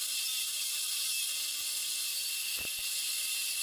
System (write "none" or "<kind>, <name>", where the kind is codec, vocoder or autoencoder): none